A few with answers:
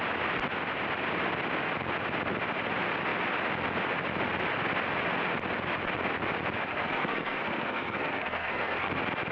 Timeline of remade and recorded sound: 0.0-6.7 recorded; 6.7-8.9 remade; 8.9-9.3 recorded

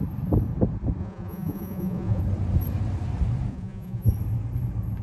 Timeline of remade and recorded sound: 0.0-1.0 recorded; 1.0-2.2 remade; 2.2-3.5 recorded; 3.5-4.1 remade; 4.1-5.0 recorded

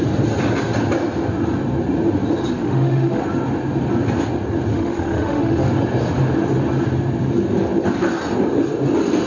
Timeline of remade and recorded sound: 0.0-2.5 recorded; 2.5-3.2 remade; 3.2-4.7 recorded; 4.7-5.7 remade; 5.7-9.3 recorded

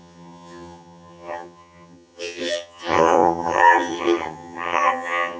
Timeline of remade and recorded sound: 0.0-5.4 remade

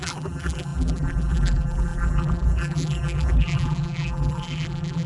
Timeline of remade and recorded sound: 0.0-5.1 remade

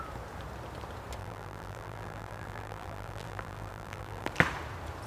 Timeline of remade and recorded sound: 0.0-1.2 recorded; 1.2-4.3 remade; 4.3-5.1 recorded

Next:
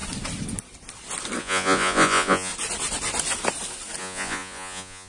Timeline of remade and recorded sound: 0.0-1.4 recorded; 1.4-2.5 remade; 2.5-4.0 recorded; 4.0-5.1 remade